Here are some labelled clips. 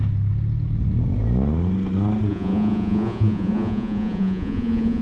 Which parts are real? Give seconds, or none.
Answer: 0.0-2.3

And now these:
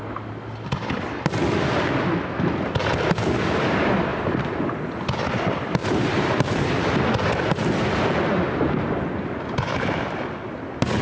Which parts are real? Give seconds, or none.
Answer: 0.0-4.1; 4.6-5.8; 6.9-11.0

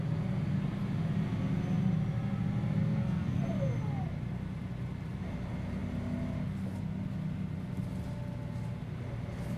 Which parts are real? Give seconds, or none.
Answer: 0.0-2.8; 3.4-9.6

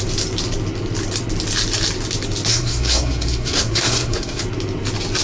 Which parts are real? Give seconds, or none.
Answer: 0.0-2.5; 4.4-5.2

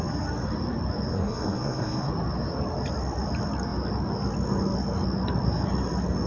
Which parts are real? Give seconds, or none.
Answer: 0.0-1.1; 2.1-6.3

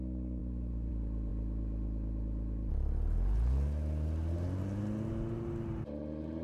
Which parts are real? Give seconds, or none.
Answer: 0.0-0.4; 0.9-6.4

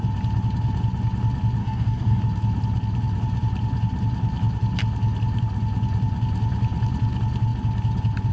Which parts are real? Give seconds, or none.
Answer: 0.0-1.6; 2.2-8.3